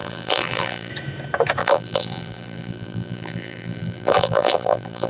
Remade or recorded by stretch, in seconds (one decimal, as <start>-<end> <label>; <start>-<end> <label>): 0.0-0.9 remade; 0.9-1.6 recorded; 1.6-5.1 remade